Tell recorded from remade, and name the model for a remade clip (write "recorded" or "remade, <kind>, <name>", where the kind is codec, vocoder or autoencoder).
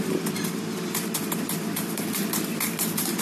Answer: remade, vocoder, BigVGAN v2